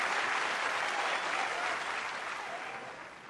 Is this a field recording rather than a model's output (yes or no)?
yes